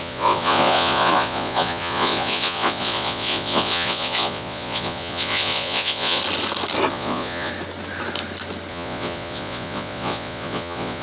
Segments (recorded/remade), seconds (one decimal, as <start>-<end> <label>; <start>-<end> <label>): 0.0-6.2 remade; 6.2-6.9 recorded; 6.9-7.5 remade; 7.5-8.7 recorded; 8.7-11.0 remade